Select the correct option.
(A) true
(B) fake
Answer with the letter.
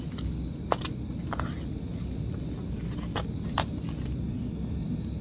A